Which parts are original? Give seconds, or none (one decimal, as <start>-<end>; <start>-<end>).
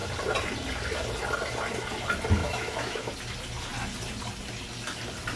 0.0-2.4; 3.1-5.4